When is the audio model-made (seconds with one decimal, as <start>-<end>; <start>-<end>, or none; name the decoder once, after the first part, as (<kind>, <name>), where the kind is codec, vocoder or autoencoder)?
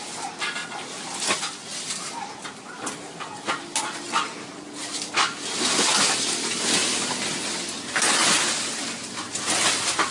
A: none